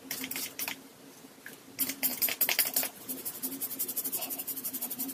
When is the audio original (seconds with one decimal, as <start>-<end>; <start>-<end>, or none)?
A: 2.1-4.0